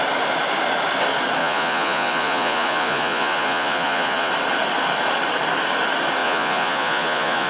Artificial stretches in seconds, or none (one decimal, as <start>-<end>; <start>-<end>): 1.4-4.3; 6.2-7.5